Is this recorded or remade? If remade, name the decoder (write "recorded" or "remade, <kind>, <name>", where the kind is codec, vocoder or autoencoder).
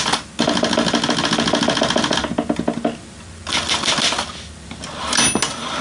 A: recorded